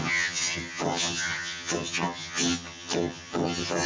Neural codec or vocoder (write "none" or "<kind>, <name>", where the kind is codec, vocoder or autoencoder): vocoder, HiFi-GAN